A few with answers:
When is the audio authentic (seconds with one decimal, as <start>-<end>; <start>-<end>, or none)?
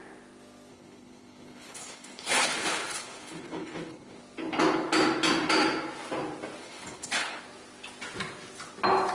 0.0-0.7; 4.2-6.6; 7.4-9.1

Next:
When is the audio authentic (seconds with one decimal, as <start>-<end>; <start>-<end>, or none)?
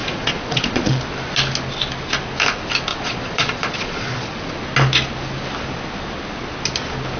1.0-2.9; 4.5-7.2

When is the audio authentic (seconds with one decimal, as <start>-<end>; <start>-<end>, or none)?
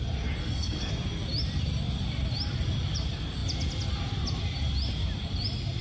0.0-0.4; 0.9-5.8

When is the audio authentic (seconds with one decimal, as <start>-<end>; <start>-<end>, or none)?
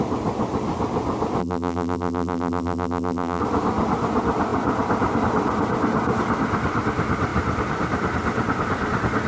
0.0-1.4; 3.4-9.3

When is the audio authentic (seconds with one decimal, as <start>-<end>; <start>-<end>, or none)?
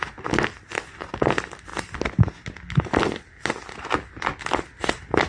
0.0-5.3